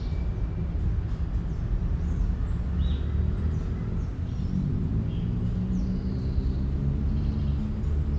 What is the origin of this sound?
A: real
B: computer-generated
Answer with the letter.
A